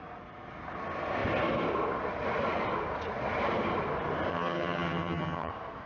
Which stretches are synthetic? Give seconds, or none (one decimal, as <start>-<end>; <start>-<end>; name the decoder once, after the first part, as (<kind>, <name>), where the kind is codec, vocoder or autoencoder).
4.3-5.5 (vocoder, HiFi-GAN)

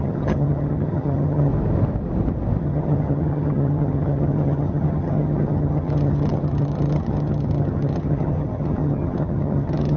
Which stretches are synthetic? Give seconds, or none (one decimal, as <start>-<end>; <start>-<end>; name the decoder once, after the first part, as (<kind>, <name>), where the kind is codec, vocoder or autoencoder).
0.0-1.5 (vocoder, HiFi-GAN); 2.6-10.0